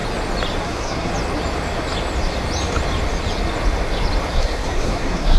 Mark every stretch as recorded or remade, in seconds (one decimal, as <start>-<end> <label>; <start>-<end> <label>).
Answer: 0.0-0.6 recorded; 0.6-1.1 remade; 1.1-4.3 recorded; 4.3-5.4 remade